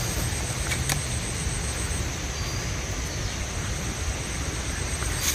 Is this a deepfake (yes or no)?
no